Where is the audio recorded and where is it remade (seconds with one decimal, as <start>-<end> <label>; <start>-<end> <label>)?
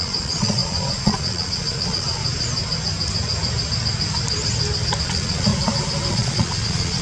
0.0-2.2 remade; 2.2-5.0 recorded; 5.0-5.5 remade; 5.5-6.1 recorded; 6.1-7.0 remade